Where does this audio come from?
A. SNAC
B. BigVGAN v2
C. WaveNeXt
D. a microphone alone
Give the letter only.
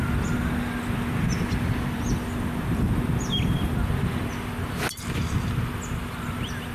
D